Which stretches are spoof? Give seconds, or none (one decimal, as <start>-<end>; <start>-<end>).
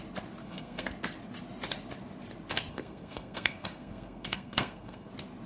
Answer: 0.4-0.9; 2.7-5.1